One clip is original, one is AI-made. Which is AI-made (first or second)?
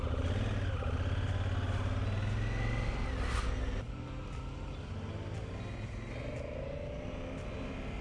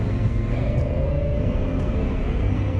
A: second